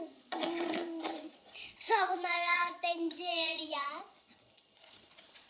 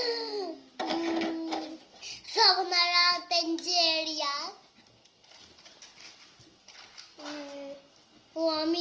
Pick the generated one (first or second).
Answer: first